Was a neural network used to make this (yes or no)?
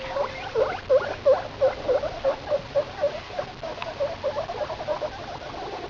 no